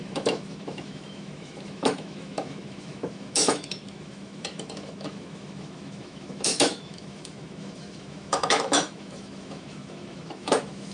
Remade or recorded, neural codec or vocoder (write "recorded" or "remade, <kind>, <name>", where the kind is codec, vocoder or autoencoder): remade, autoencoder, DAC-VAE